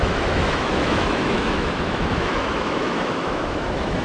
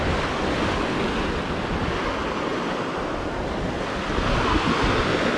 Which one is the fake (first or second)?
first